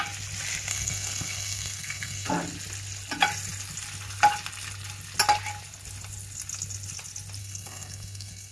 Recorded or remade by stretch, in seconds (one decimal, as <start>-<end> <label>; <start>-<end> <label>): 0.0-0.7 recorded; 0.7-2.3 remade; 2.3-7.4 recorded; 7.4-8.5 remade